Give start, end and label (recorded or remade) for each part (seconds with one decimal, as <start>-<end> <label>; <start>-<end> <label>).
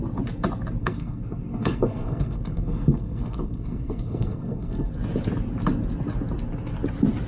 0.0-0.8 recorded; 0.8-4.9 remade; 4.9-7.3 recorded